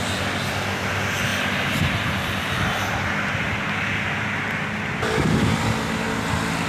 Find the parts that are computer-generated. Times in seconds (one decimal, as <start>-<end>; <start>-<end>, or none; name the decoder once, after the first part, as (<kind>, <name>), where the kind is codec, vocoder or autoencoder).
none